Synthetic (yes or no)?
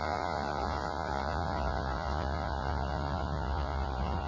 yes